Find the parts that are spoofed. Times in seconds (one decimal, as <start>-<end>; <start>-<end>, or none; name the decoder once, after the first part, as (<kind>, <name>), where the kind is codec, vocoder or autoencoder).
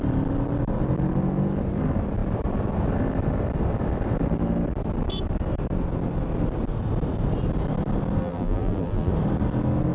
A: 8.2-9.1 (vocoder, BigVGAN v2)